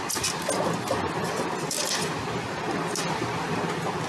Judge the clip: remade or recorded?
recorded